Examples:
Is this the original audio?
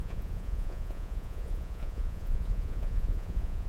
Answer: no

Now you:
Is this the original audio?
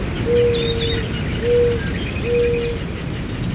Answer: yes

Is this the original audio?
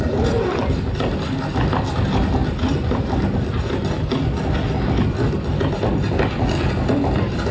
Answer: yes